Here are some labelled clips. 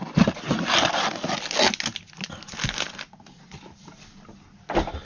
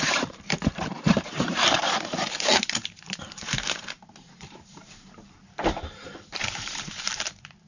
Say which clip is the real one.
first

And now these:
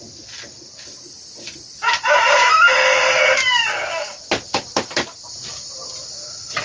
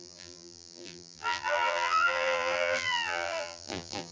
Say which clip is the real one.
first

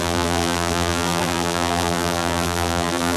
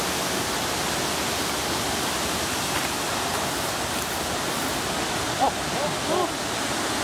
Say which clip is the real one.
second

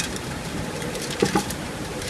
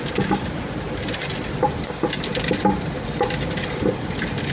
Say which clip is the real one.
second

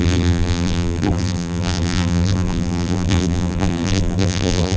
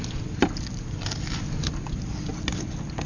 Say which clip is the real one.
second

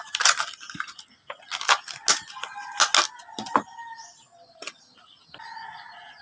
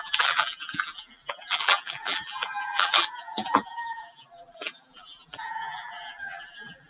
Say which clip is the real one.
first